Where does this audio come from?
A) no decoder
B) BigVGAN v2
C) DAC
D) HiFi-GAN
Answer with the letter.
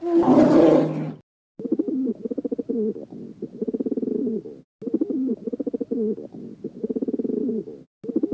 A